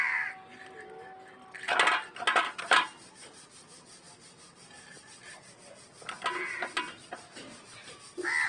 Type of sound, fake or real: real